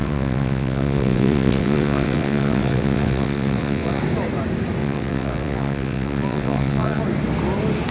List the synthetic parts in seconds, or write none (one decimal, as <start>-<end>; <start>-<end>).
0.0-4.0; 4.8-7.0